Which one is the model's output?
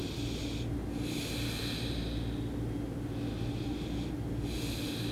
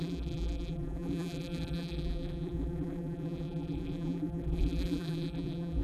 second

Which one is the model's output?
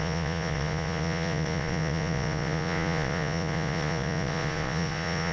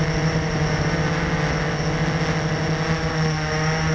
first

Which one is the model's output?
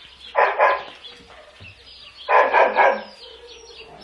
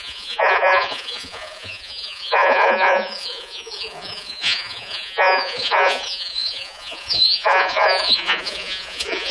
second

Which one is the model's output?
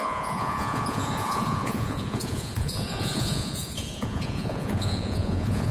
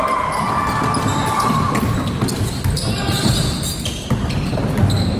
first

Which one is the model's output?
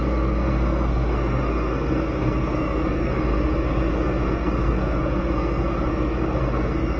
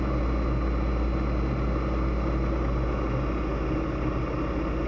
first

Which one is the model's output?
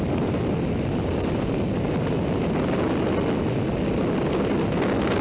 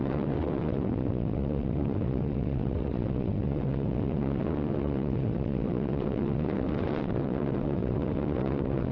second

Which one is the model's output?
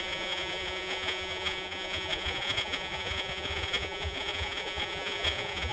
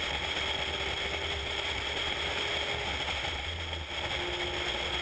first